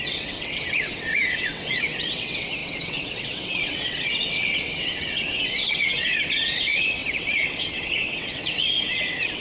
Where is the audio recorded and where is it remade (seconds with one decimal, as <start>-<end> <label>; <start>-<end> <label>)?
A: 0.0-9.4 remade